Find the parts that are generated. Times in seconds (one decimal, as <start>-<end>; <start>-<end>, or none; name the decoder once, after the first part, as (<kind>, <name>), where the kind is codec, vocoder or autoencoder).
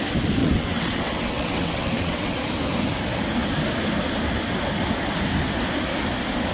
0.4-2.4 (vocoder, WaveNeXt)